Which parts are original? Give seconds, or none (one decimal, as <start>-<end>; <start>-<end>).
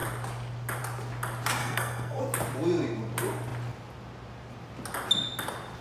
0.0-1.6; 2.2-5.8